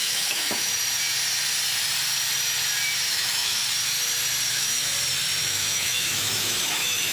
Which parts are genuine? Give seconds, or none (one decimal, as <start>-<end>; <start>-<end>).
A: 0.7-3.1; 3.6-4.5; 4.9-5.4